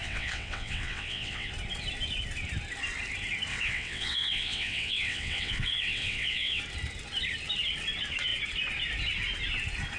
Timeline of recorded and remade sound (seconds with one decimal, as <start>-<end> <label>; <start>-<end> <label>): 0.0-1.5 remade; 1.5-3.5 recorded; 3.5-6.6 remade; 6.6-10.0 recorded